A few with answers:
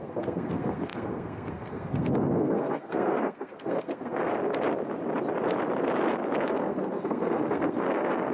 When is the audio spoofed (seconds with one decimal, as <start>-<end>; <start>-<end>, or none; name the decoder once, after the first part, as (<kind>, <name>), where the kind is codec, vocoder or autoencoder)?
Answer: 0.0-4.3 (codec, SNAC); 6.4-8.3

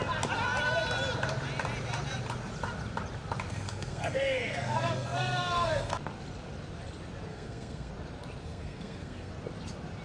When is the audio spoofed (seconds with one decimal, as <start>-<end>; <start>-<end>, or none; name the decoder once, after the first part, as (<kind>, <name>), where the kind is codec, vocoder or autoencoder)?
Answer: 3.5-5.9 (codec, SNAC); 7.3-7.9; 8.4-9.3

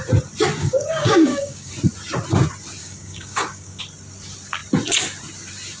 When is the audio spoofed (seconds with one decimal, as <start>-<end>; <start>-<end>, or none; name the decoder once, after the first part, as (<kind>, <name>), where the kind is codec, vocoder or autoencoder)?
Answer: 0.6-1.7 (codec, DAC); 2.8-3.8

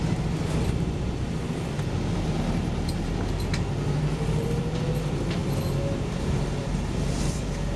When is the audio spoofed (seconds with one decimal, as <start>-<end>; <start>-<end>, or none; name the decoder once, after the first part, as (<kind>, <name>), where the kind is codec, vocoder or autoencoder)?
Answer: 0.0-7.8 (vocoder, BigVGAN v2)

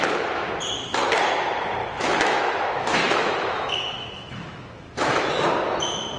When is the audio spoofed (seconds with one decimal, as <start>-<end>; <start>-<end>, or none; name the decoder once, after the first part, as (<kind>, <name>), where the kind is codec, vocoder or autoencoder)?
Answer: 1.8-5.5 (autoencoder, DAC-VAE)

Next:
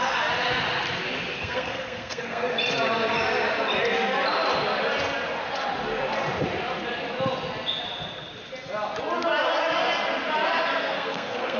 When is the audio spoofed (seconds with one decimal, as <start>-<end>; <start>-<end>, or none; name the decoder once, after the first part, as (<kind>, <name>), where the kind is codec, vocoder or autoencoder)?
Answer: 1.3-2.5 (codec, SNAC); 10.7-11.6

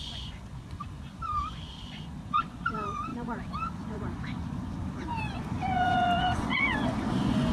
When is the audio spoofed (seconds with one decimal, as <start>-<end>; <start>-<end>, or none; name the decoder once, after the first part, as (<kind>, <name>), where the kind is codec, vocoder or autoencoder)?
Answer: 0.0-7.5 (vocoder, Vocos)

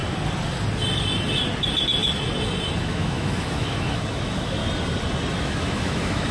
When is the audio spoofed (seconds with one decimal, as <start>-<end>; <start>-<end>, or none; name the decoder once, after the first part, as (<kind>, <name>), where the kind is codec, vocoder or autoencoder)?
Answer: 2.8-4.6 (autoencoder, DAC-VAE); 5.4-6.3